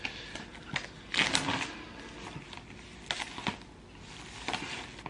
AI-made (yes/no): no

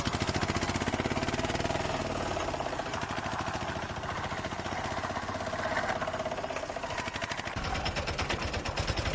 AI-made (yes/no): no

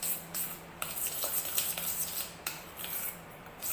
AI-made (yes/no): yes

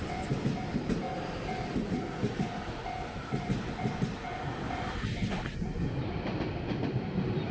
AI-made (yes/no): no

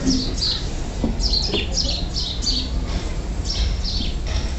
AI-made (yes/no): no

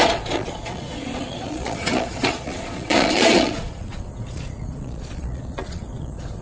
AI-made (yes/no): yes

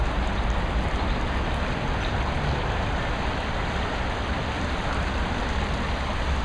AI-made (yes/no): no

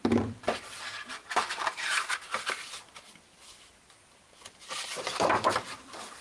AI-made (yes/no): yes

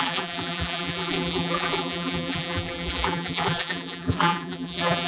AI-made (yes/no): yes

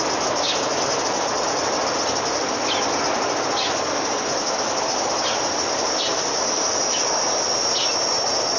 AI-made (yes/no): no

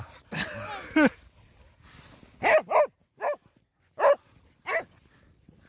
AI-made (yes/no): no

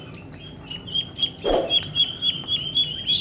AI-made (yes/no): no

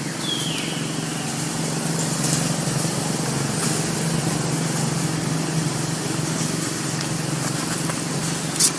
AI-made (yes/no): no